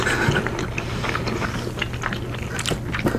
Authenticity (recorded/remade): recorded